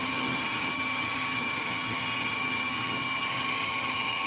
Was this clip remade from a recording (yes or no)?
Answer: yes